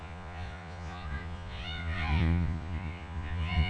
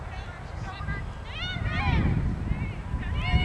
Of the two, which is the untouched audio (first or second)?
second